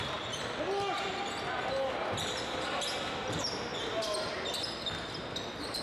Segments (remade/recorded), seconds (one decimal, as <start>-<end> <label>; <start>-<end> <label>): 0.0-5.8 recorded